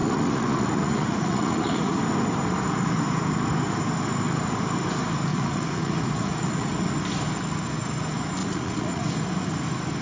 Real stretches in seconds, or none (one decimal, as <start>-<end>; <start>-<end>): 2.0-5.3; 6.7-8.4; 9.1-10.0